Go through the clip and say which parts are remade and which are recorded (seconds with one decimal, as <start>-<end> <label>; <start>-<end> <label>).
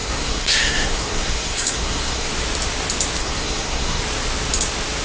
0.0-2.3 remade; 2.3-3.2 recorded; 3.2-4.0 remade; 4.0-5.0 recorded